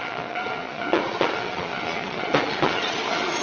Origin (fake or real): fake